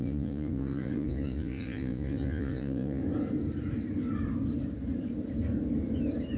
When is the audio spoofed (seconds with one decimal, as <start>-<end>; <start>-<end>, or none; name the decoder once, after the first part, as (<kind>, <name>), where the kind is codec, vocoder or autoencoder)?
0.0-3.0 (vocoder, Vocos)